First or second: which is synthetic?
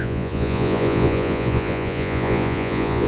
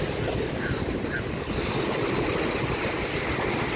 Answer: first